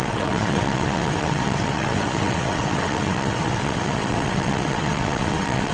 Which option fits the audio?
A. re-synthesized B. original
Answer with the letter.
A